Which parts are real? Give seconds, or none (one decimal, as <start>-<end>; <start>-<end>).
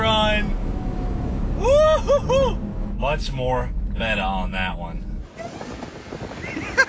0.0-0.6; 1.4-2.7; 3.8-6.9